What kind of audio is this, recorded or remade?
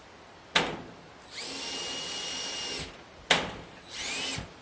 recorded